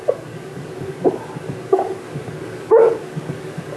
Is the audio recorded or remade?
remade